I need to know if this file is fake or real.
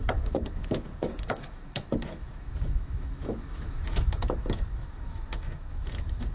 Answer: fake